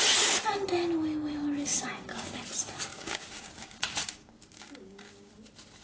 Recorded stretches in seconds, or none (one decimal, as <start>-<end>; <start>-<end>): 0.0-1.7; 2.4-2.9; 5.3-5.8

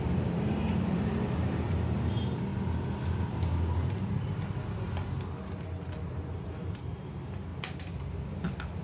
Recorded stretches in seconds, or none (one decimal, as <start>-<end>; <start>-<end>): 2.5-6.0; 7.5-8.8

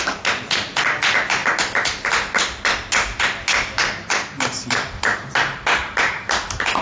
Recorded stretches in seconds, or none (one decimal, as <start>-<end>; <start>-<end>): 0.0-6.8

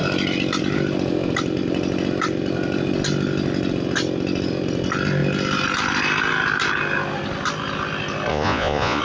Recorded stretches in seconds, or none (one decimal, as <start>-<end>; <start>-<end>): 0.0-8.3

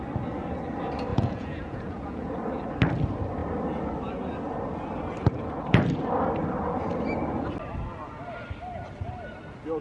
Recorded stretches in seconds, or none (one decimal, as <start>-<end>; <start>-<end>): 0.0-1.1; 2.3-9.8

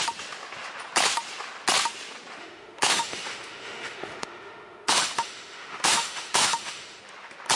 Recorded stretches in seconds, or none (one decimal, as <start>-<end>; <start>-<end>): 0.0-2.4; 7.0-7.6